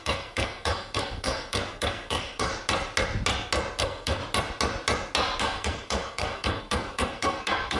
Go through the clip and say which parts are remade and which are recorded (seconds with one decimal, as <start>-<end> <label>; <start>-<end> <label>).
0.0-2.5 remade; 2.5-3.8 recorded; 3.8-4.2 remade; 4.2-5.4 recorded; 5.4-7.8 remade